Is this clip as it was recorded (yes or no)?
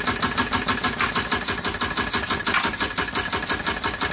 yes